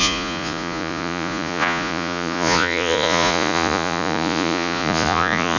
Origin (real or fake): fake